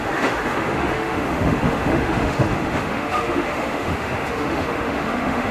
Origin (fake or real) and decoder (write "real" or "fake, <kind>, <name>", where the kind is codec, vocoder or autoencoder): fake, autoencoder, DAC-VAE